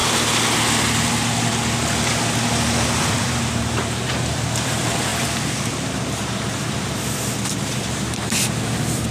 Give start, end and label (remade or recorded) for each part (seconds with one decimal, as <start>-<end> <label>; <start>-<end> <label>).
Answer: 0.0-3.0 recorded; 3.0-9.1 remade